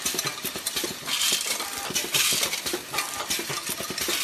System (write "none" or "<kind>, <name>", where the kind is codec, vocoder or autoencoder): none